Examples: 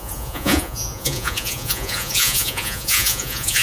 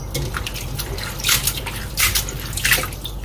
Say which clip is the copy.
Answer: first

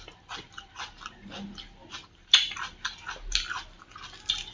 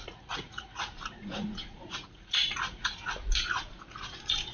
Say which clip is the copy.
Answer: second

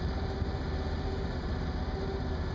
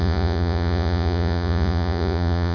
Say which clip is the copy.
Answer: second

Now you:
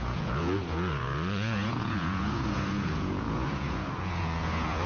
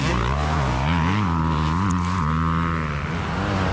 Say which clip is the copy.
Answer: first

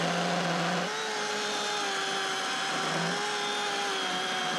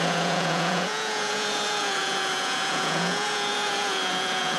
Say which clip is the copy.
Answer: second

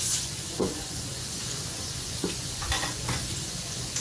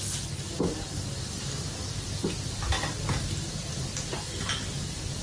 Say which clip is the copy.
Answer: first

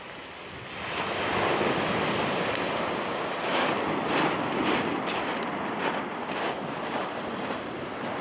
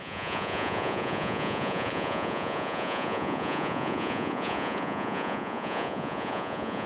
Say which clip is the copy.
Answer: second